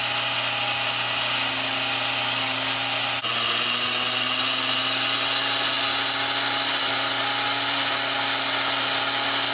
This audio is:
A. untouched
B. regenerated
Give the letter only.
A